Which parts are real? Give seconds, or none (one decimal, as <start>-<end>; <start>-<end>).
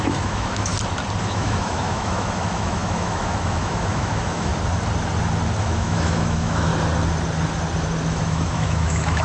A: 0.7-1.2; 4.5-5.6; 6.7-8.1